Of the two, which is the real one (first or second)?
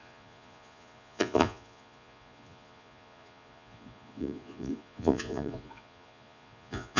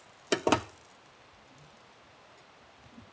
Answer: second